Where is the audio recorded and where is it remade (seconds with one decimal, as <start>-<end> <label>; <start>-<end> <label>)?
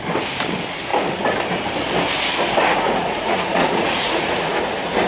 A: 0.0-2.6 recorded; 2.6-4.6 remade; 4.6-5.1 recorded